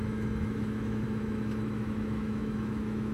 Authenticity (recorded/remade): remade